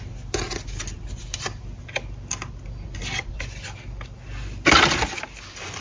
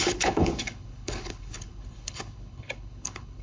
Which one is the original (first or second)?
first